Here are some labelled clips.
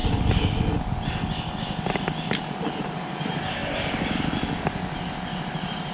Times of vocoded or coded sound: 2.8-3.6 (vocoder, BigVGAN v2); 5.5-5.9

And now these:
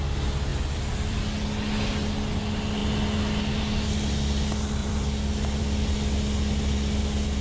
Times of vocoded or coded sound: 0.5-1.2 (vocoder, BigVGAN v2); 4.8-5.6

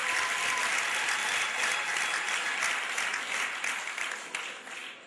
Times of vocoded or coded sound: 0.0-0.7 (vocoder, BigVGAN v2)

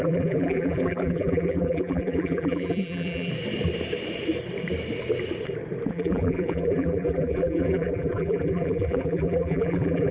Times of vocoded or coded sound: 0.0-3.3 (vocoder, BigVGAN v2); 5.9-10.1

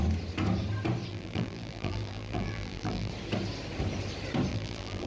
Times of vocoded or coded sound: 1.1-3.1 (vocoder, BigVGAN v2); 4.5-5.1

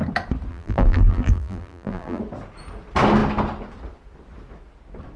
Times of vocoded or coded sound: 0.5-2.2 (vocoder, BigVGAN v2)